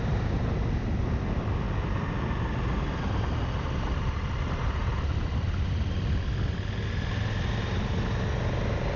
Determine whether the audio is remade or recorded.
recorded